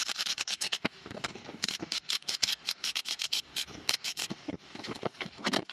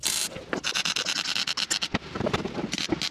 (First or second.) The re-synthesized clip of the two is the first